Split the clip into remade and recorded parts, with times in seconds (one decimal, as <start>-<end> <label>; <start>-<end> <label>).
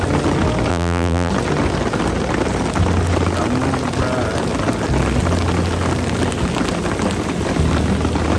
0.0-0.7 recorded; 0.7-1.3 remade; 1.3-8.4 recorded